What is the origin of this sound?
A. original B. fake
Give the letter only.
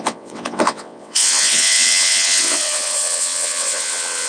B